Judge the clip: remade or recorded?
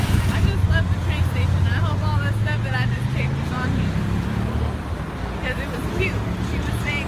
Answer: recorded